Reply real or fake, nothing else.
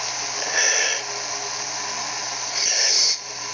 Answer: real